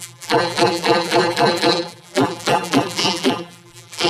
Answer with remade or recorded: remade